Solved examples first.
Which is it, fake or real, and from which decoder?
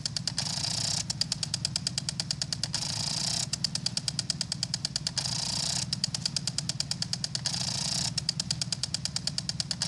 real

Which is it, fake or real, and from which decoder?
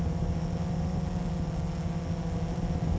real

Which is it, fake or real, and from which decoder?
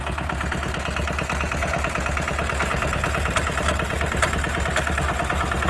real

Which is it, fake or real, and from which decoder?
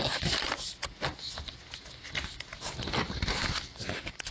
real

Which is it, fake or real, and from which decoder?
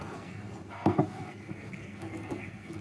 fake, codec, SNAC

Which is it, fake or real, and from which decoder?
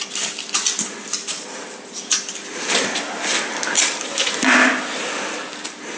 real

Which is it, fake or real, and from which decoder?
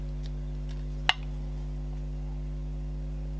real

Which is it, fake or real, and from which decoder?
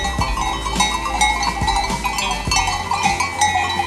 real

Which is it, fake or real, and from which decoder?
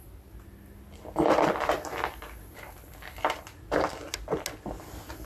real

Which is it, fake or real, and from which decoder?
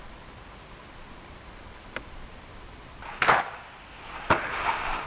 real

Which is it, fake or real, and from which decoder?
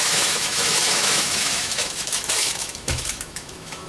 fake, autoencoder, DAC-VAE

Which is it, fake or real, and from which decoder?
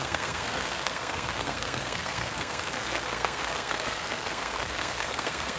fake, codec, SNAC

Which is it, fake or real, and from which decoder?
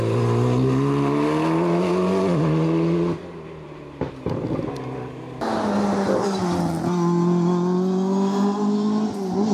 real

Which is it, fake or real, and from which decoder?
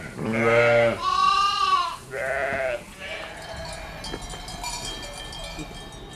real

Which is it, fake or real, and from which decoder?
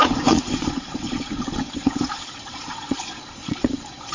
fake, vocoder, Vocos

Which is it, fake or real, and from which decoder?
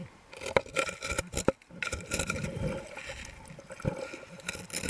real